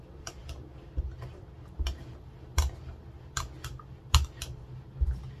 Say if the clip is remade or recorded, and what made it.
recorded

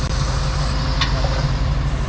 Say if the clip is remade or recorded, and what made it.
recorded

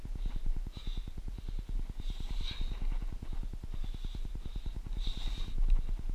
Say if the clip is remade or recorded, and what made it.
recorded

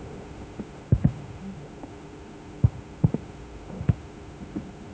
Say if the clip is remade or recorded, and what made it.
remade, autoencoder, DAC-VAE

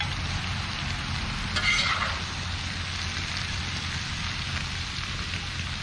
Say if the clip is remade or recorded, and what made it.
recorded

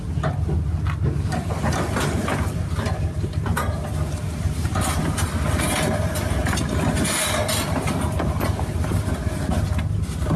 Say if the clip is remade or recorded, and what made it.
recorded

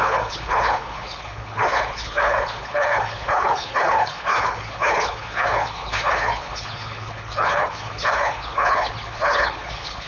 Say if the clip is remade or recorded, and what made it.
remade, codec, HILCodec